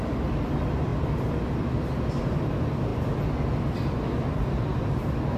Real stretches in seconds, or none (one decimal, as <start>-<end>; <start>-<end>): 0.0-5.4